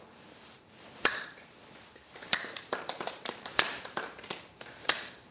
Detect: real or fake fake